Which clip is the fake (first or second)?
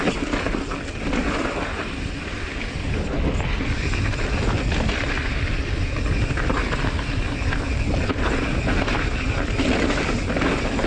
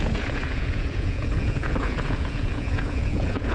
second